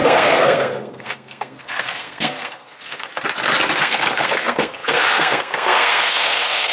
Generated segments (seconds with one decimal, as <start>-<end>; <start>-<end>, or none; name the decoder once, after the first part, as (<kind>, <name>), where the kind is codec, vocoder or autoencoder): 0.0-3.1 (codec, SNAC); 3.8-6.7